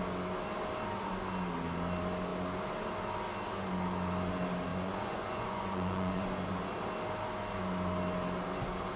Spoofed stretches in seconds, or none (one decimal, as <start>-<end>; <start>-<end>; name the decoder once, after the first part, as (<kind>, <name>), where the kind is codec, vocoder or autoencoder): 4.7-6.6 (vocoder, Vocos)

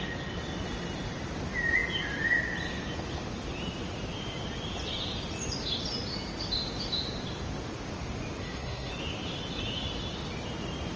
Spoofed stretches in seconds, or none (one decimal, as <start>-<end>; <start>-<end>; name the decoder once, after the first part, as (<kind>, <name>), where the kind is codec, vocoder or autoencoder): 8.4-8.9 (codec, SNAC)

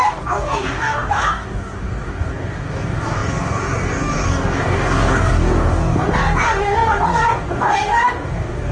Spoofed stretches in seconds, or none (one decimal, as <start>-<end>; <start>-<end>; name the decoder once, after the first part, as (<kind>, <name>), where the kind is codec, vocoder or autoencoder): 0.0-8.7 (codec, DAC)

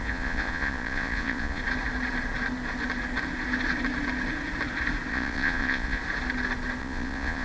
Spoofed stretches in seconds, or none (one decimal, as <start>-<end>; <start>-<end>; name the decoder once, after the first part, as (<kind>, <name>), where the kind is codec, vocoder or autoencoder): 0.0-1.6 (vocoder, Vocos); 5.1-6.0; 6.8-7.4

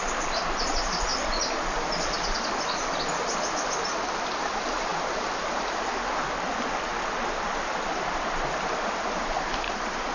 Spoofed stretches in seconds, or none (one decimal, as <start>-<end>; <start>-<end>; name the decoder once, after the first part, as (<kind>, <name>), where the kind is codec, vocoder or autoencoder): none

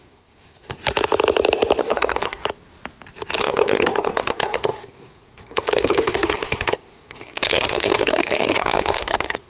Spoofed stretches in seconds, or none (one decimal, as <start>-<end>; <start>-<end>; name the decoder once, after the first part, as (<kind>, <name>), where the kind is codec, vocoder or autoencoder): 0.0-0.8 (codec, SNAC); 1.8-2.4; 3.4-9.5